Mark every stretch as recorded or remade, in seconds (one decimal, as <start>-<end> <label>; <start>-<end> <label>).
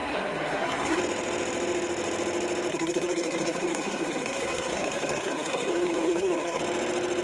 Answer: 0.0-1.0 remade; 1.0-2.7 recorded; 2.7-6.6 remade; 6.6-7.2 recorded